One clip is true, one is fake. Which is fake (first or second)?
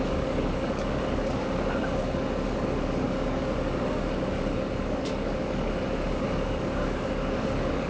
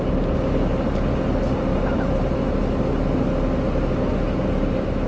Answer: first